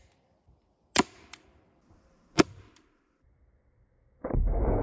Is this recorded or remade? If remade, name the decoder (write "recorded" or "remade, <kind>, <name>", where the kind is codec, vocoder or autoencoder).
recorded